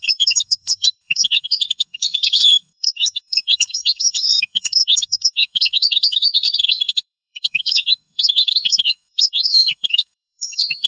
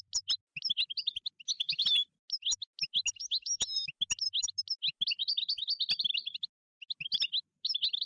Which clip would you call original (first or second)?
second